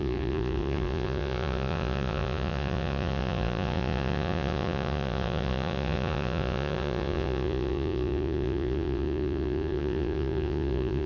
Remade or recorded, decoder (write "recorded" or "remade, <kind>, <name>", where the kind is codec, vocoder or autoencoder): remade, vocoder, Vocos